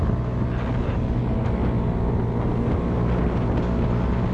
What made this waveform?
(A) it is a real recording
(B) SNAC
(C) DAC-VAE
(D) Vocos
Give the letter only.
A